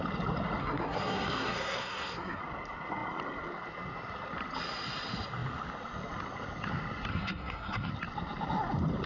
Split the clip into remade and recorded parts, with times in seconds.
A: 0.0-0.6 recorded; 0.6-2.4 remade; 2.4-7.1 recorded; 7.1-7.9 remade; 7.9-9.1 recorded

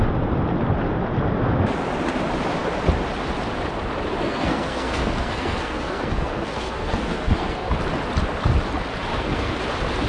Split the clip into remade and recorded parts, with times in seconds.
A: 0.0-4.2 recorded; 4.2-7.7 remade; 7.7-9.1 recorded; 9.1-9.6 remade; 9.6-10.1 recorded

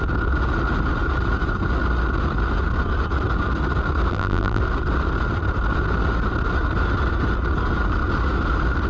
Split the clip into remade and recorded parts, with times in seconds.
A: 0.0-4.1 recorded; 4.1-4.6 remade; 4.6-8.9 recorded